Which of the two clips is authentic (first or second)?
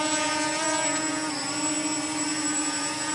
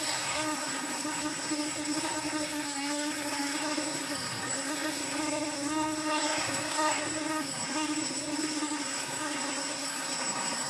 first